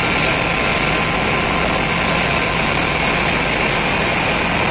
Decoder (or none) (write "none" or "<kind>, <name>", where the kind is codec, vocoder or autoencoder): none